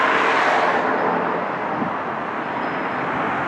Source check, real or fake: real